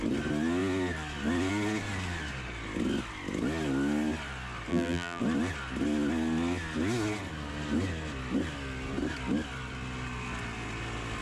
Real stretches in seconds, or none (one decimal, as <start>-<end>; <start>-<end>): 0.0-4.7; 5.2-11.2